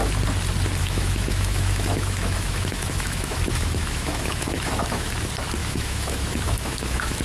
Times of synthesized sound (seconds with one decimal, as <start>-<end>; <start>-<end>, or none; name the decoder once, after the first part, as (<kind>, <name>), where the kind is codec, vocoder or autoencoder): 0.8-5.1 (autoencoder, DAC-VAE); 5.6-7.2